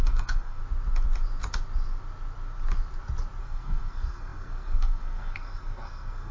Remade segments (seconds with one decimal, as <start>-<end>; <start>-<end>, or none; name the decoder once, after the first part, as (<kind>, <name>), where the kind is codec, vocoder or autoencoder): 0.0-0.6 (codec, SNAC); 3.4-6.3